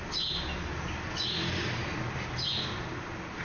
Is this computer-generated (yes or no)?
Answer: no